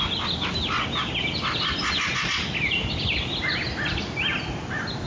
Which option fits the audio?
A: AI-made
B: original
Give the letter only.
B